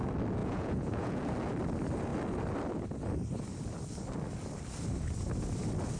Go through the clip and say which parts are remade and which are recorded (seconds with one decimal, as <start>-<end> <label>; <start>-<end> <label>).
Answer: 0.0-0.4 recorded; 0.4-1.2 remade; 1.2-6.0 recorded